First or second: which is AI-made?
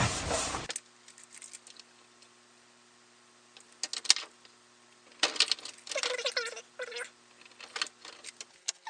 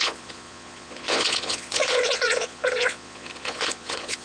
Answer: second